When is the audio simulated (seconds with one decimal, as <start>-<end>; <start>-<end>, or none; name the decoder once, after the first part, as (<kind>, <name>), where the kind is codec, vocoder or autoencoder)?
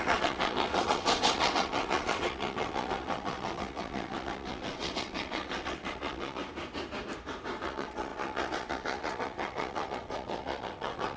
0.0-6.4 (vocoder, WaveNeXt); 7.6-11.2